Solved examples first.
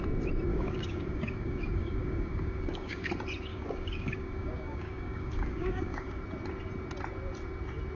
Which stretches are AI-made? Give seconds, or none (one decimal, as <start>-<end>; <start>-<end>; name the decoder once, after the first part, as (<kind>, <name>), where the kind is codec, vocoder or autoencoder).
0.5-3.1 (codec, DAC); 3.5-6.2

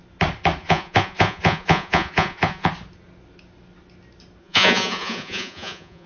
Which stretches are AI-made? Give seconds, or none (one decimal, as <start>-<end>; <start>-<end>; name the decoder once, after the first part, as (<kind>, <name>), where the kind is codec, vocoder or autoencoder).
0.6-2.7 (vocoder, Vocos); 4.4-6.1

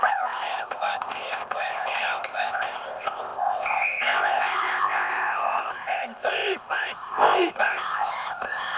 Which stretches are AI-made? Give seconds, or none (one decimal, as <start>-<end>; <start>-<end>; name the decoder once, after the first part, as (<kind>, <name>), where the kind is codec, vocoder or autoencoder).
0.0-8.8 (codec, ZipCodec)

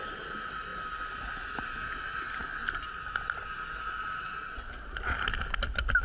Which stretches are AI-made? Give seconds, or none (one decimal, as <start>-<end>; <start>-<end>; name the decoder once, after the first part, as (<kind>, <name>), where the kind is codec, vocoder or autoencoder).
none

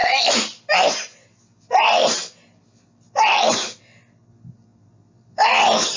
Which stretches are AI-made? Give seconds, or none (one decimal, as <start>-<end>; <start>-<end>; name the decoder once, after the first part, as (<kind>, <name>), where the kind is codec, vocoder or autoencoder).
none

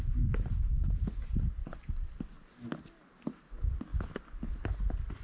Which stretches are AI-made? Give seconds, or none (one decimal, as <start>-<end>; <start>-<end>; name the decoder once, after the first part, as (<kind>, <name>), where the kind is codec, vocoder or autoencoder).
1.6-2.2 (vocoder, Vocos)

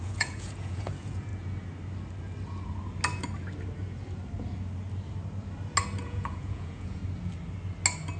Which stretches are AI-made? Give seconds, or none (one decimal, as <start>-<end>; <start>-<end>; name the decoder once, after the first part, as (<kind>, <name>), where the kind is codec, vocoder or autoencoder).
0.0-1.3 (vocoder, Vocos); 6.0-7.0

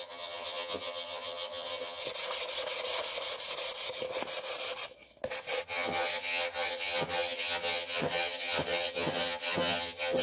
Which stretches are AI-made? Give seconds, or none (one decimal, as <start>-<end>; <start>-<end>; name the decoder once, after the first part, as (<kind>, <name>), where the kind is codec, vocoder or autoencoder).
0.0-2.0 (vocoder, HiFi-GAN); 5.6-10.2